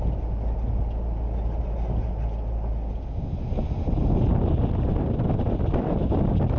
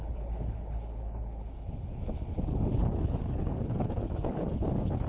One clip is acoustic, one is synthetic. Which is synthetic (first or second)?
second